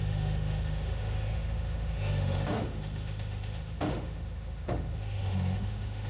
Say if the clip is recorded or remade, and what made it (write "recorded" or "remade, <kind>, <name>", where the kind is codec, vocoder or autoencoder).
remade, autoencoder, DAC-VAE